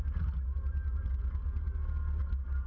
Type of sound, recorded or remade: recorded